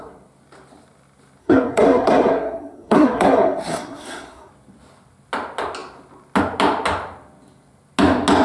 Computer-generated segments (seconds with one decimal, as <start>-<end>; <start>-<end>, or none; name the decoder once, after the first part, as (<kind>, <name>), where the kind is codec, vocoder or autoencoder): 1.4-4.5 (codec, SNAC)